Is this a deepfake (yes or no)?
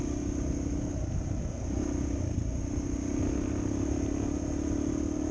no